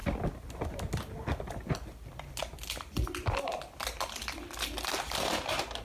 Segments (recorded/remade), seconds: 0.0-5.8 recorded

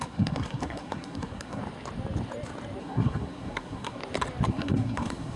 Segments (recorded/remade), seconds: 0.0-1.6 remade; 1.6-2.8 recorded; 2.8-4.0 remade; 4.0-4.5 recorded; 4.5-5.4 remade

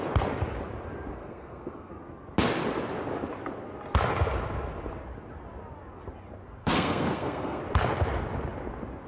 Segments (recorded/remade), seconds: 0.0-1.2 recorded; 1.2-1.9 remade; 1.9-6.6 recorded; 6.6-7.6 remade; 7.6-9.1 recorded

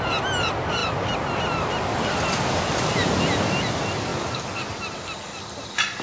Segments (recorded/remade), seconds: 0.0-6.0 recorded

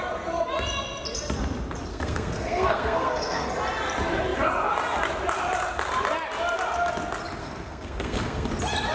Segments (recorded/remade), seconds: 0.0-1.9 recorded; 1.9-3.5 remade; 3.5-7.4 recorded; 7.4-8.5 remade; 8.5-8.9 recorded

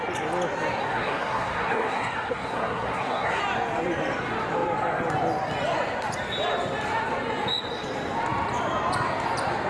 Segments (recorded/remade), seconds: 0.0-0.8 recorded; 0.8-3.4 remade; 3.4-9.7 recorded